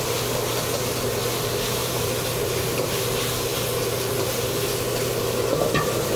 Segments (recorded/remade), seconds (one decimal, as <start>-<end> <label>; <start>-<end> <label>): 0.0-1.8 recorded; 1.8-3.0 remade; 3.0-6.2 recorded